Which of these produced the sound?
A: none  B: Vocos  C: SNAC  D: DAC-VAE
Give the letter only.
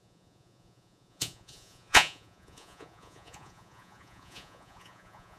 B